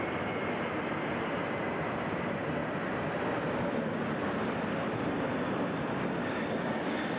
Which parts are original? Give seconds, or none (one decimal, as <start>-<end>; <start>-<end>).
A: 0.0-6.2

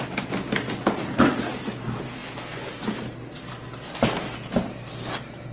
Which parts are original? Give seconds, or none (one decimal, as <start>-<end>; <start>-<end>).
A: 0.0-5.5

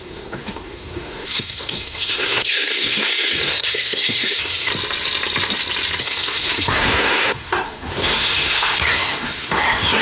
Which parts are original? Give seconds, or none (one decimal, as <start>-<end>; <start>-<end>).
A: 4.7-6.0

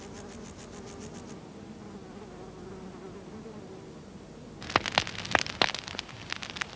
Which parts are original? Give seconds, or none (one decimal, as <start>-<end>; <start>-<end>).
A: 0.0-6.8

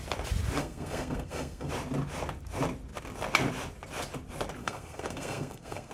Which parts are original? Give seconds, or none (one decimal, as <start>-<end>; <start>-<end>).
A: 0.0-0.6; 1.7-4.6

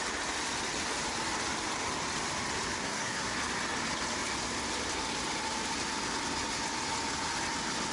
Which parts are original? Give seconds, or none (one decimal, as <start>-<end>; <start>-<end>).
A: 0.0-2.8; 3.3-7.9

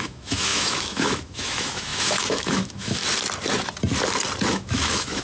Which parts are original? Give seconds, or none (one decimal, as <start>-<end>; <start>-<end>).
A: 3.0-4.5

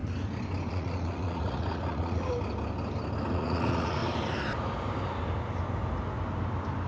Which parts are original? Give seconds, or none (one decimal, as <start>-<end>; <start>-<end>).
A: 0.0-0.7; 2.3-3.3; 4.0-6.9